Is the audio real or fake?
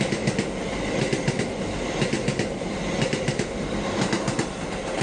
real